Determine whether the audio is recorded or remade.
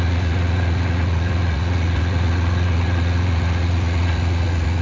remade